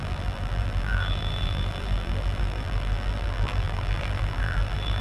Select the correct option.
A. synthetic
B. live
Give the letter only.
A